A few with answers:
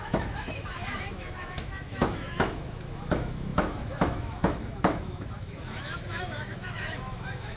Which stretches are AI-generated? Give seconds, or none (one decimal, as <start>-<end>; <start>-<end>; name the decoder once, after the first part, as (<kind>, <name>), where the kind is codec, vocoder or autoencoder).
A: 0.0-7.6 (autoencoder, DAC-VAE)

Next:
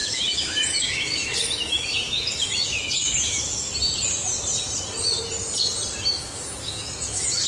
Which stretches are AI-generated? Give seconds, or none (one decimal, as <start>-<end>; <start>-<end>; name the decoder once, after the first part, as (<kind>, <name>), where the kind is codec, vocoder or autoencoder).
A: 0.0-3.7 (autoencoder, DAC-VAE); 6.2-7.5

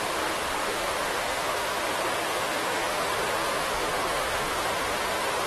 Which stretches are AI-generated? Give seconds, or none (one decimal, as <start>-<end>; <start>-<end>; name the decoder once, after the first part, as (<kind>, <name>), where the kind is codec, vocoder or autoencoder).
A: 0.6-1.9 (autoencoder, DAC-VAE); 2.3-3.1; 3.5-4.6

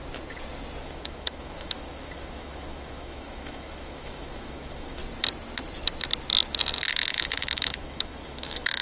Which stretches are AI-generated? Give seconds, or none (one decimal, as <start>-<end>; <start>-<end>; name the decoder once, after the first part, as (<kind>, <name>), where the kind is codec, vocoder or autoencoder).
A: 0.8-5.0 (autoencoder, DAC-VAE); 6.9-8.8

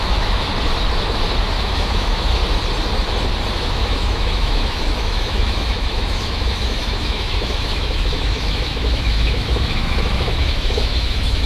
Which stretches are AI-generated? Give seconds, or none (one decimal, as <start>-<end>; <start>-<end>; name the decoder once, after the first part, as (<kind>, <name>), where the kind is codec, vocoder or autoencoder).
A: 0.0-0.5 (autoencoder, DAC-VAE); 1.6-2.4; 3.5-11.5

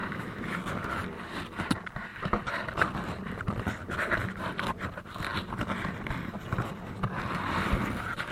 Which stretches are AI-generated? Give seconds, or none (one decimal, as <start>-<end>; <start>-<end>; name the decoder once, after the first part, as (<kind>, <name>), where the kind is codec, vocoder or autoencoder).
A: 0.0-0.6 (autoencoder, DAC-VAE)

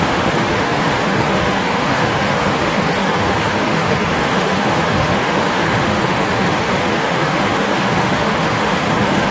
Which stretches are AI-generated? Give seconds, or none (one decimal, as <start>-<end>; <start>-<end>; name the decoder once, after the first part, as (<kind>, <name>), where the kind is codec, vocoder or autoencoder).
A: 0.0-9.3 (autoencoder, DAC-VAE)

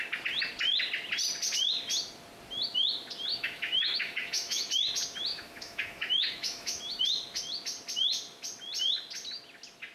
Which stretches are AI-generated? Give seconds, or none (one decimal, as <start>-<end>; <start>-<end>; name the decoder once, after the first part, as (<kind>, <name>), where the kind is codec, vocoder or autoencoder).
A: 3.3-4.7 (autoencoder, DAC-VAE); 5.3-7.0